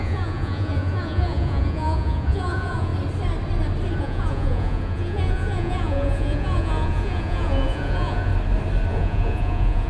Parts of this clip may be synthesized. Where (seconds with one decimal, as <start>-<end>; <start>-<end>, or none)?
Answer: 0.0-2.9; 4.0-8.3; 8.9-9.9